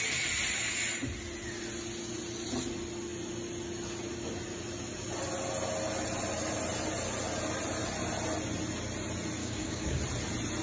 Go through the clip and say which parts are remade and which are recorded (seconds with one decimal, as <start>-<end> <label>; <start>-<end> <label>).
0.0-9.4 recorded; 9.4-10.0 remade; 10.0-10.6 recorded